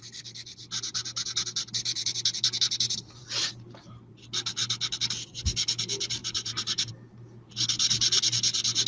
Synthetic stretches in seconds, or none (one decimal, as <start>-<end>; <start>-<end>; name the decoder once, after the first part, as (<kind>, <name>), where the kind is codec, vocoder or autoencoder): 6.2-6.9 (vocoder, BigVGAN v2)